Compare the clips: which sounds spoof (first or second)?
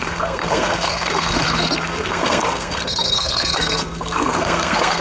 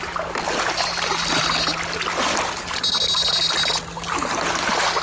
first